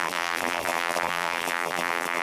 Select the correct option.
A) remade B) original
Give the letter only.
A